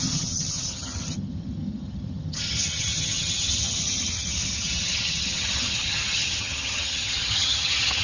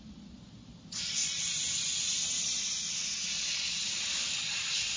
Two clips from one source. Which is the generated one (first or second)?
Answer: first